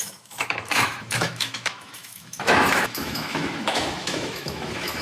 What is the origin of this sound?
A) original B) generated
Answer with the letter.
B